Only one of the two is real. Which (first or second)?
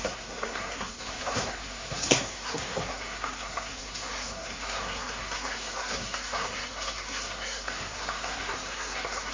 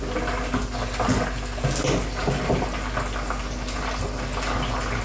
second